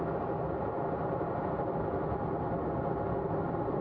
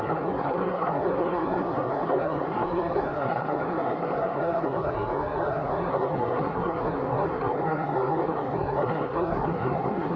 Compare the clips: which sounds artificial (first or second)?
second